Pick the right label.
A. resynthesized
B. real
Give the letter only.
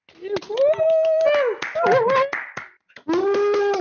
B